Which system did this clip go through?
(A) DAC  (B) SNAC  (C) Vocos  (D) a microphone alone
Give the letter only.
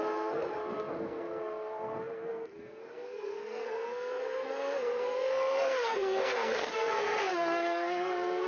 B